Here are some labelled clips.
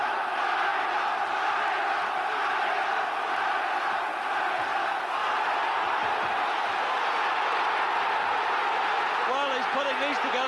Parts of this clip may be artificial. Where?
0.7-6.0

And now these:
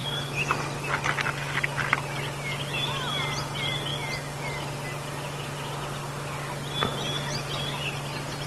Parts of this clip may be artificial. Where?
none

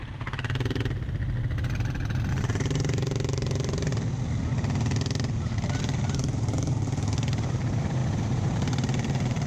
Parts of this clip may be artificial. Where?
2.3-3.9; 5.8-9.5

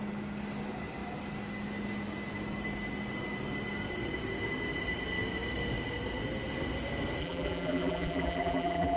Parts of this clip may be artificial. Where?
7.2-9.0

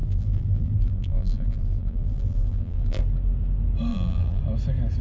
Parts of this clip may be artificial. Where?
0.0-3.0; 3.9-4.4